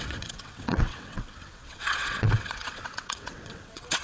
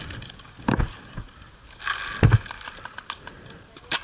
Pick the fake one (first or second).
first